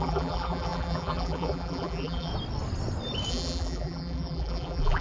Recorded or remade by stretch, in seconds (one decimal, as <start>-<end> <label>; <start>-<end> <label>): 0.0-2.3 remade; 2.3-3.3 recorded; 3.3-5.0 remade